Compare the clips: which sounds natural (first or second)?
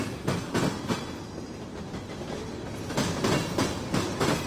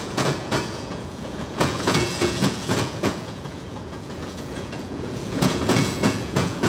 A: first